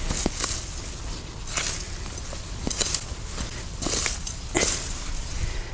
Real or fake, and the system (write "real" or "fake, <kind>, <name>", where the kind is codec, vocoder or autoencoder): real